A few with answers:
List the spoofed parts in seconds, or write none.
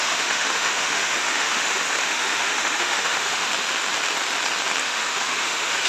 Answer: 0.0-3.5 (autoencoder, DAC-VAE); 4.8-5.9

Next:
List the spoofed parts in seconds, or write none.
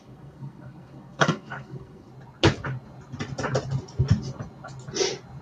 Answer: 0.0-2.1 (codec, SNAC)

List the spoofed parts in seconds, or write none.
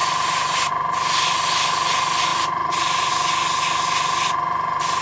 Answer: 0.0-0.7 (vocoder, BigVGAN v2); 2.3-3.1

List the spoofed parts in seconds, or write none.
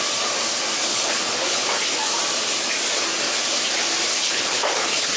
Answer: 0.9-1.8 (codec, HILCodec); 4.1-5.2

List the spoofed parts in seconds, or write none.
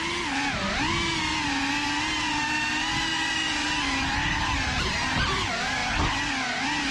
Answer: none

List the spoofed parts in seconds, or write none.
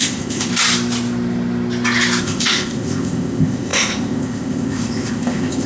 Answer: 0.0-0.5 (codec, ZipCodec); 2.2-5.7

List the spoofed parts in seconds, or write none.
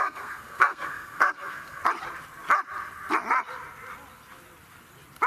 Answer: 0.0-1.8 (codec, SNAC)